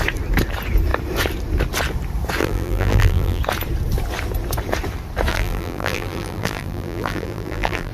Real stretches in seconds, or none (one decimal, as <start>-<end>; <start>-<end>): 0.0-2.4; 3.4-5.3